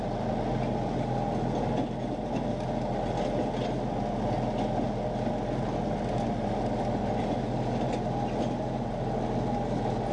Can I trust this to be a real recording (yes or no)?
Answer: yes